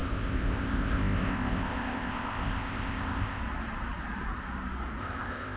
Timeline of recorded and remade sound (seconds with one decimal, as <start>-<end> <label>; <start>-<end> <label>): 0.0-3.4 remade; 3.4-5.0 recorded; 5.0-5.6 remade